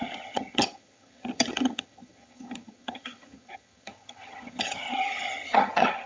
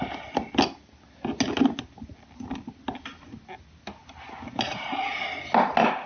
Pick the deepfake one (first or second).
first